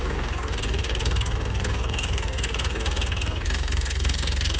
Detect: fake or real fake